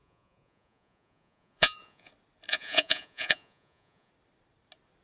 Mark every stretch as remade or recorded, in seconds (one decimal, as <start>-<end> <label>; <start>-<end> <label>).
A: 0.0-2.1 remade; 2.1-2.5 recorded; 2.5-4.1 remade; 4.1-5.0 recorded